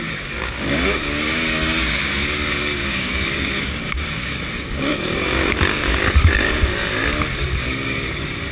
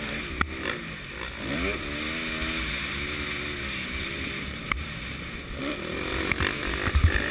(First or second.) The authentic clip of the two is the second